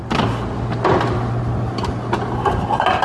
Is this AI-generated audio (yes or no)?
no